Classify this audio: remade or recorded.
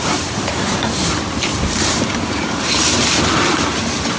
remade